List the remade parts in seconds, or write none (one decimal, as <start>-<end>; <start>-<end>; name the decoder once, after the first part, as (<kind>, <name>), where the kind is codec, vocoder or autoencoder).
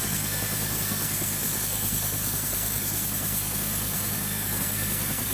0.0-5.3 (codec, SNAC)